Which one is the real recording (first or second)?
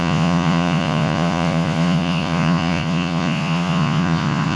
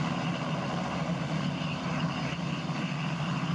second